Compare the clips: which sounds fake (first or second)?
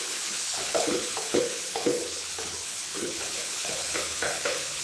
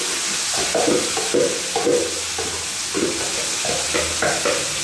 first